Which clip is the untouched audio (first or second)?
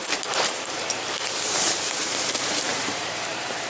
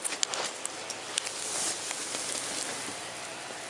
second